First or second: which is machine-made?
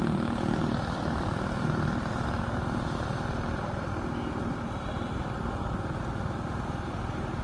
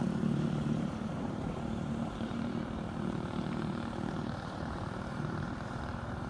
second